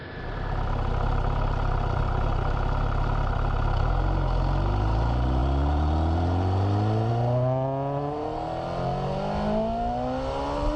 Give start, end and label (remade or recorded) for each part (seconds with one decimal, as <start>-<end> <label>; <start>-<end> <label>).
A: 0.0-10.8 recorded